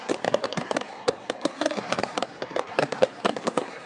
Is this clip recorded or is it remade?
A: remade